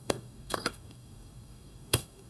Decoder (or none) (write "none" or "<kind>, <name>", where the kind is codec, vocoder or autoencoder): codec, DAC